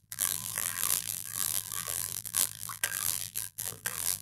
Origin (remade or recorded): remade